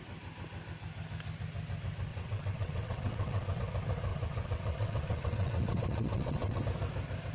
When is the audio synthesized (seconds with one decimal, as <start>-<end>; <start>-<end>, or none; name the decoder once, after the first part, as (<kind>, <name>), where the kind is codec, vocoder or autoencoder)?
2.1-3.6 (vocoder, WaveNeXt); 4.1-6.6